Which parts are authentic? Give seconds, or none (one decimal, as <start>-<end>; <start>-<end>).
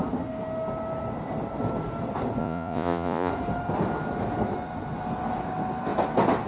0.0-2.4; 3.3-6.5